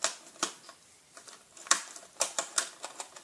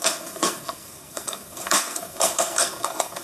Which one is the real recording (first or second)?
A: first